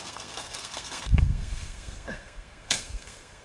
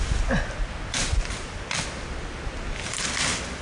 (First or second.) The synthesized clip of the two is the first